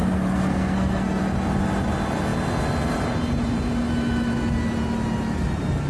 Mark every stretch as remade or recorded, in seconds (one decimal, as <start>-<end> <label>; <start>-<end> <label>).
0.0-1.2 remade; 1.2-5.9 recorded